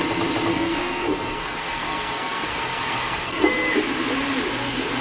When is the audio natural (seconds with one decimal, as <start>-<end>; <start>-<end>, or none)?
0.0-0.5; 3.5-5.0